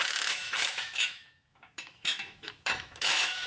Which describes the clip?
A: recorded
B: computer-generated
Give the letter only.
B